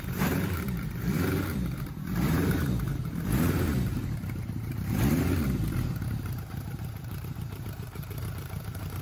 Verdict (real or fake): fake